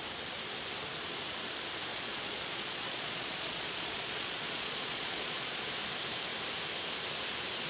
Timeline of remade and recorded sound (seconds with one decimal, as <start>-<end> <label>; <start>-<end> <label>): 0.0-1.9 recorded; 1.9-5.7 remade; 5.7-7.7 recorded